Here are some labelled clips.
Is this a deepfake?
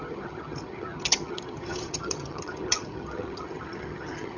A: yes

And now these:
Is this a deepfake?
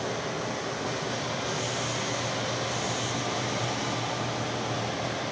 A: no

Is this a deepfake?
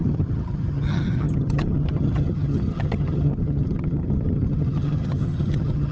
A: yes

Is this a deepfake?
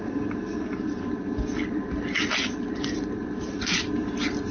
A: no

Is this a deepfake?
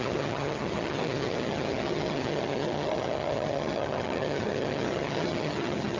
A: yes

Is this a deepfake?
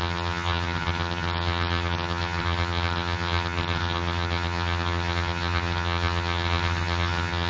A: yes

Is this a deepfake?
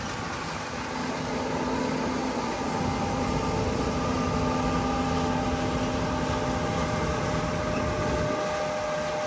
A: no